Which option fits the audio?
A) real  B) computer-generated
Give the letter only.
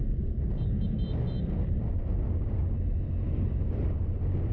A